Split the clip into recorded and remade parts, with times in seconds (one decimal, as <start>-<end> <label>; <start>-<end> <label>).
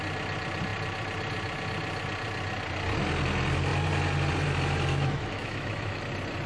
0.0-4.9 recorded; 4.9-6.0 remade; 6.0-6.5 recorded